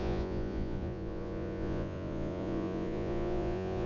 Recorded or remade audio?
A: remade